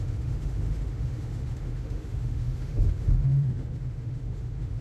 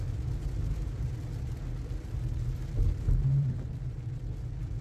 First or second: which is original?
second